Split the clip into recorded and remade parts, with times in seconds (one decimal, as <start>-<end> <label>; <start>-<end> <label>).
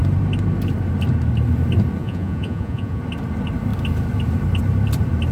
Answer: 0.0-2.0 recorded; 2.0-3.0 remade; 3.0-5.3 recorded